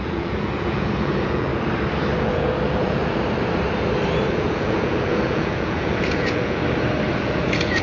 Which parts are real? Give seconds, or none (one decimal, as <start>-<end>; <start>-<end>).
1.5-2.2; 3.0-4.3; 6.6-7.2

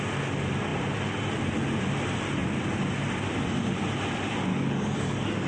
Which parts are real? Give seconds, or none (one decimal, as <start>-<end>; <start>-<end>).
0.0-4.5

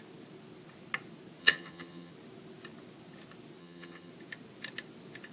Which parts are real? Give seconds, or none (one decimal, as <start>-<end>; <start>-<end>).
0.0-1.4; 2.1-3.6; 4.1-5.3

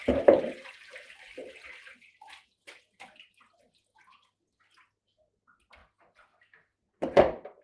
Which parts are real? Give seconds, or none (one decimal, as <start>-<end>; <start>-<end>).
2.8-7.6

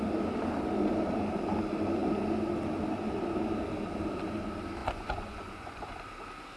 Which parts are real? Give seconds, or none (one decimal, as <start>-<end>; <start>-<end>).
0.0-4.8; 6.0-6.6

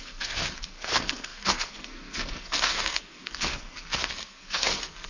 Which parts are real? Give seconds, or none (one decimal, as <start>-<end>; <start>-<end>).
none

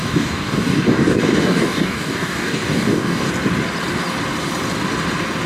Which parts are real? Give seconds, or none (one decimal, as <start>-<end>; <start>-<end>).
3.3-5.5